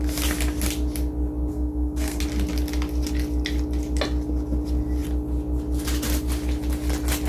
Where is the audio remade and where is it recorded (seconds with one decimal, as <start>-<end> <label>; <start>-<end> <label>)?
0.0-1.5 recorded; 1.5-2.2 remade; 2.2-7.3 recorded